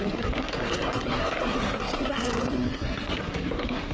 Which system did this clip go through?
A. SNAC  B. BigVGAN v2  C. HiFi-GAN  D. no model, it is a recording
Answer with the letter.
A